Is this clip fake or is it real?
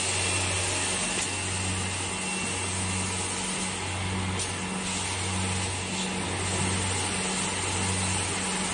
real